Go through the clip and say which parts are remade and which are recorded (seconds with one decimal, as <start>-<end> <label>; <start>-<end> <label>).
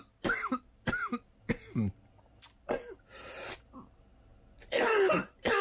0.0-5.6 recorded